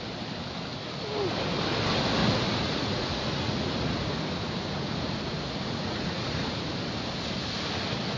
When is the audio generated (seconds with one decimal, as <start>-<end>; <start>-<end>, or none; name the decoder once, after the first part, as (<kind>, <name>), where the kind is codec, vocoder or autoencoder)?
2.2-6.6 (vocoder, Vocos)